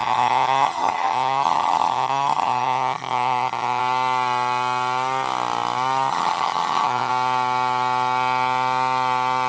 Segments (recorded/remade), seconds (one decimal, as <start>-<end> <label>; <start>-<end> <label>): 0.0-3.8 remade; 3.8-6.1 recorded; 6.1-7.1 remade; 7.1-9.5 recorded